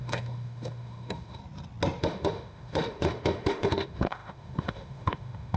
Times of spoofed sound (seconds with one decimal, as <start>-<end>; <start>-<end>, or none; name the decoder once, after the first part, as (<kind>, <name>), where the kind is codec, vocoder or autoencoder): 0.0-1.4 (autoencoder, DAC-VAE); 2.0-5.6